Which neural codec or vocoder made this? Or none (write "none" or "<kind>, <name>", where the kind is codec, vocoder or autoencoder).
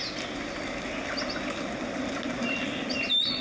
none